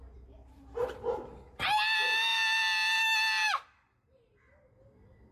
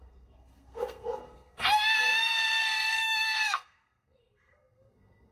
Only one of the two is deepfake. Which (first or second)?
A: second